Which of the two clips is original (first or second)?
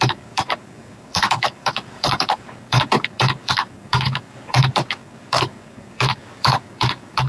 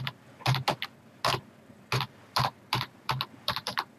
second